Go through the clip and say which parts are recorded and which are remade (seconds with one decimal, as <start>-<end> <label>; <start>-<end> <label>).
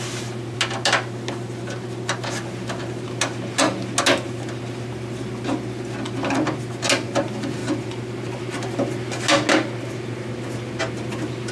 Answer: 0.0-11.5 recorded